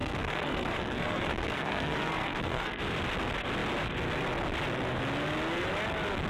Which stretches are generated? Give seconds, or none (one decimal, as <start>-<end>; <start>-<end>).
0.0-2.8